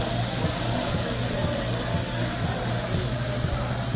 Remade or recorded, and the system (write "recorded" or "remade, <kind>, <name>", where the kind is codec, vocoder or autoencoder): recorded